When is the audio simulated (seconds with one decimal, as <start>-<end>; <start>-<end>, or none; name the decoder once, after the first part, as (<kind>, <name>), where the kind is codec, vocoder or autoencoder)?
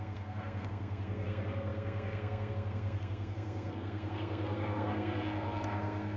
0.0-6.2 (codec, SNAC)